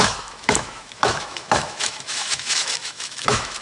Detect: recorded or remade remade